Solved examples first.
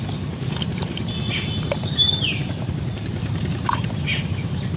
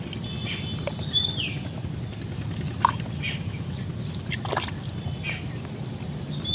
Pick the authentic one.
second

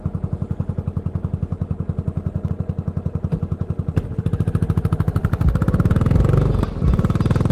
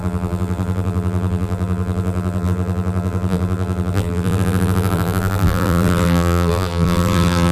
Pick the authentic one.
first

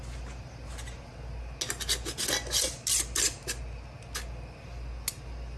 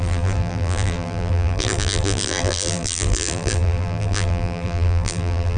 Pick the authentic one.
first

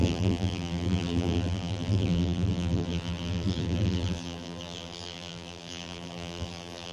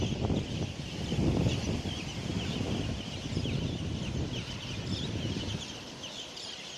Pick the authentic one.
second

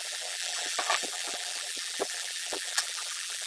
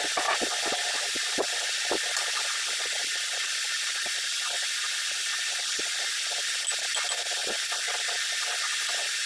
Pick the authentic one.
second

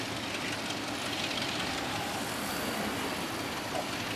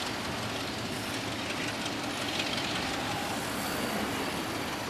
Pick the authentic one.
second